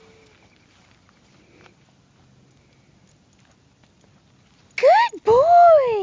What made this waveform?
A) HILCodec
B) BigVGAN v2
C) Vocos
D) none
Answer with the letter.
D